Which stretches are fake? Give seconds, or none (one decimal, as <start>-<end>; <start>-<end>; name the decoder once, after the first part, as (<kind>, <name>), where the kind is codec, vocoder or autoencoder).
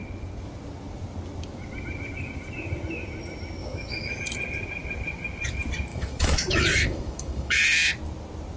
3.6-4.2 (autoencoder, DAC-VAE); 5.9-7.6